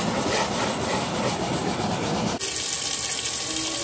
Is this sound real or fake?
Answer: real